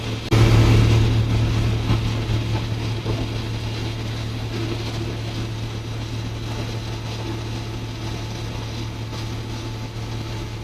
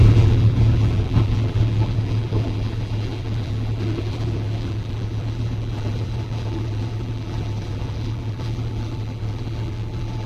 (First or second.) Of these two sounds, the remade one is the second